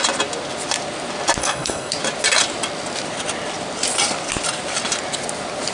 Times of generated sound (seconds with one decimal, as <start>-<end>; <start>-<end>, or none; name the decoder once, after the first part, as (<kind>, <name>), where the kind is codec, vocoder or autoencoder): 1.4-1.9 (codec, SNAC)